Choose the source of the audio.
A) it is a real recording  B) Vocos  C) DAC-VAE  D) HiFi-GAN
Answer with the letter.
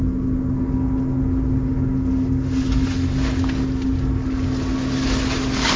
A